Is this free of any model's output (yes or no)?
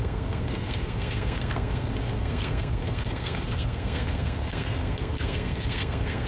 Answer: no